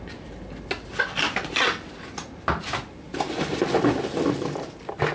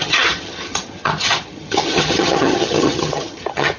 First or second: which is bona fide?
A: first